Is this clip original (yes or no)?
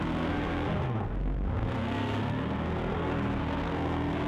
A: no